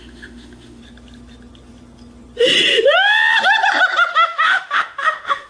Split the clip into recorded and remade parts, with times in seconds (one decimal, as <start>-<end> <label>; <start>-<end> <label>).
0.0-0.8 remade; 0.8-4.1 recorded; 4.1-5.5 remade